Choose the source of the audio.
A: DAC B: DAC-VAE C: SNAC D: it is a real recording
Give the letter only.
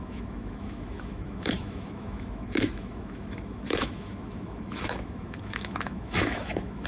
B